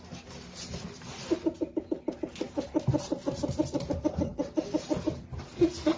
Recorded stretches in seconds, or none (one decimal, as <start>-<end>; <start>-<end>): 0.0-6.0